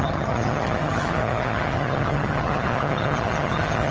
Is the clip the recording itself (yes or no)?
no